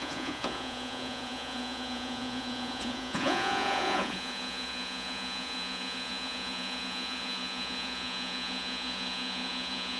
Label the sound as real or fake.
fake